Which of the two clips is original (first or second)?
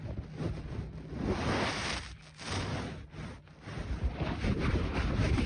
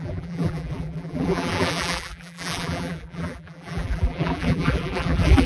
first